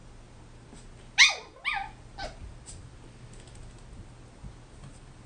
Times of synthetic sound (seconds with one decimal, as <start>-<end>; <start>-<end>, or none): none